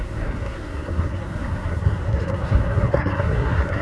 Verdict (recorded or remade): remade